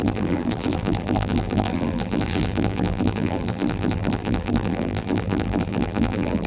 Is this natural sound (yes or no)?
no